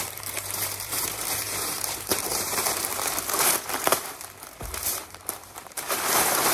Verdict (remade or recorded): remade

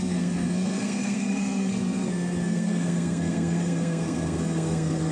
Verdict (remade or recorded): remade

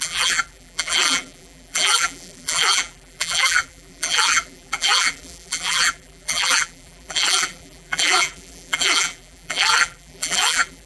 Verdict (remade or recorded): remade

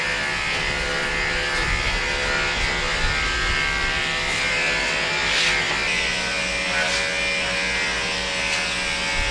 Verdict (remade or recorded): recorded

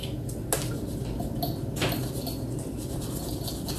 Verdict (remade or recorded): recorded